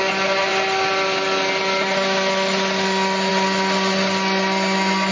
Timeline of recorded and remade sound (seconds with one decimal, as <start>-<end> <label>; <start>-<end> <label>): 0.0-5.1 recorded